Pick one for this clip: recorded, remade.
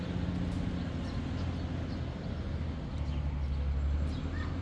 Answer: recorded